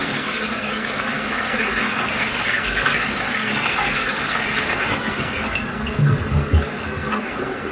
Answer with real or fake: fake